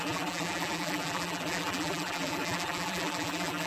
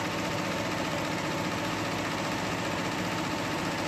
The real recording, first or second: second